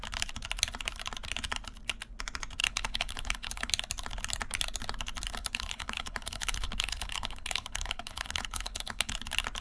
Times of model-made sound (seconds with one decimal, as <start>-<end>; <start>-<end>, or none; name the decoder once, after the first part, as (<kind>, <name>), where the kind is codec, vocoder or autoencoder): 2.6-3.7 (codec, HILCodec); 5.4-9.1